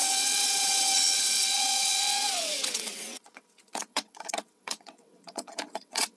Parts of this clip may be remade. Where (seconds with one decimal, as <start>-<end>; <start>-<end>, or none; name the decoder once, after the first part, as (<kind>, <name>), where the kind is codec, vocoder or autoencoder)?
0.0-6.2 (vocoder, WaveNeXt)